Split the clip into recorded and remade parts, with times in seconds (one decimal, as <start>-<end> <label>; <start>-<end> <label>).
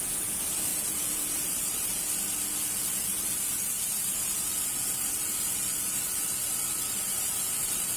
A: 0.0-0.7 recorded; 0.7-2.0 remade; 2.0-3.1 recorded; 3.1-8.0 remade